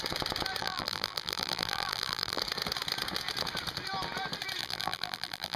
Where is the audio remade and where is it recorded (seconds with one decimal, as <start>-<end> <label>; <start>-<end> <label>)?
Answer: 0.0-0.6 recorded; 0.6-2.4 remade; 2.4-4.6 recorded; 4.6-5.6 remade